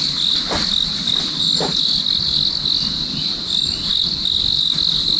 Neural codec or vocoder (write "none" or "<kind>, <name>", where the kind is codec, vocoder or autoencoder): none